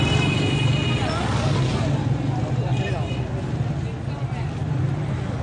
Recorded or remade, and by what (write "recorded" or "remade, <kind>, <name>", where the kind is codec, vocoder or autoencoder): recorded